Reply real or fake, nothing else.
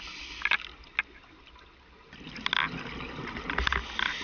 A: real